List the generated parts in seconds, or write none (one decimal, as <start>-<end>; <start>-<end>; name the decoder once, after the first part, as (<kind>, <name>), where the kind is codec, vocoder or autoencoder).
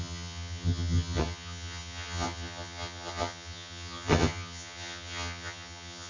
0.0-6.1 (vocoder, HiFi-GAN)